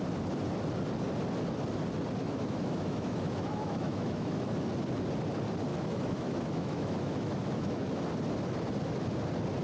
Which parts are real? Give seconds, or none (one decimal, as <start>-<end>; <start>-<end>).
0.0-2.2; 4.6-5.7; 8.0-9.6